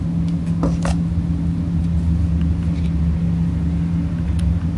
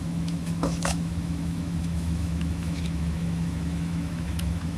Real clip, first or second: first